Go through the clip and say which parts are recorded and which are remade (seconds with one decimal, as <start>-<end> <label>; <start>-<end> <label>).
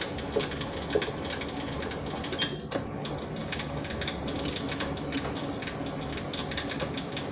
0.0-3.4 recorded; 3.4-3.9 remade; 3.9-7.3 recorded